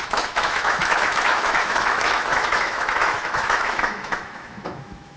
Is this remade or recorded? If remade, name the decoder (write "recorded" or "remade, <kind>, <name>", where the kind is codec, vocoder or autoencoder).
remade, autoencoder, DAC-VAE